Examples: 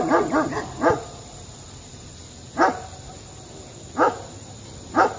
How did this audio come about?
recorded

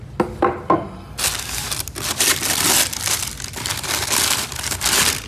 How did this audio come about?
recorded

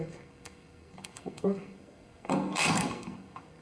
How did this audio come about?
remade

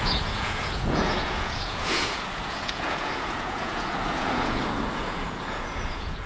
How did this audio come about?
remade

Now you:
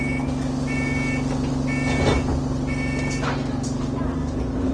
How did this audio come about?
recorded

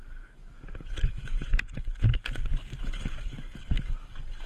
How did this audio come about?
remade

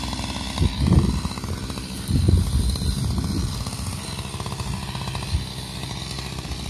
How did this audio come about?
recorded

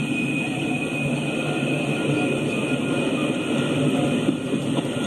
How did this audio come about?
recorded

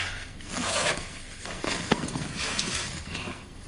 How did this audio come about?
remade